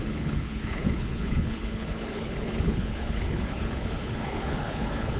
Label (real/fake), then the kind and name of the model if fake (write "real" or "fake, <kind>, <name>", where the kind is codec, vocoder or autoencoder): fake, codec, HILCodec